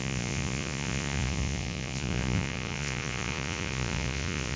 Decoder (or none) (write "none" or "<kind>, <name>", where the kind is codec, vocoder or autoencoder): vocoder, Vocos